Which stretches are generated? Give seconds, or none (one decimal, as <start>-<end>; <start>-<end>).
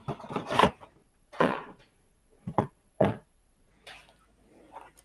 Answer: 1.0-3.7